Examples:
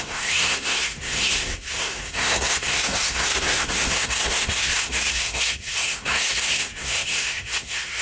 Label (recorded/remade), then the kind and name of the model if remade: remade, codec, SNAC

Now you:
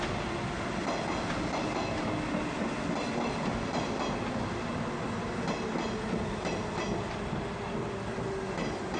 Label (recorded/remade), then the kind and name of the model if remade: recorded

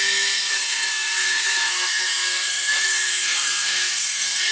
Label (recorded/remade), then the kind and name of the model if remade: remade, codec, SNAC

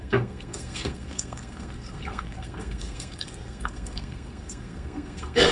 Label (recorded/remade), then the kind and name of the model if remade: remade, codec, SNAC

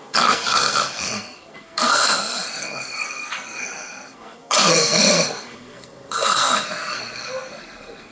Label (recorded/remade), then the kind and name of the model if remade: remade, codec, SNAC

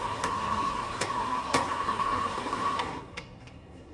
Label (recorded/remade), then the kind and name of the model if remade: remade, codec, SNAC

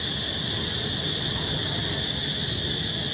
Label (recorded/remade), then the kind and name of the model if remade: recorded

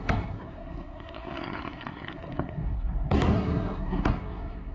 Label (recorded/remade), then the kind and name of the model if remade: remade, codec, SNAC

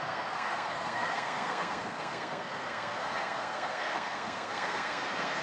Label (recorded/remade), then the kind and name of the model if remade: remade, codec, SNAC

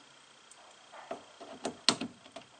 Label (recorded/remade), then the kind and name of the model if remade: recorded